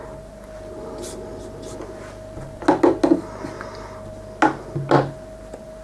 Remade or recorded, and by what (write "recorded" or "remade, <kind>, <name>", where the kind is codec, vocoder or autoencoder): recorded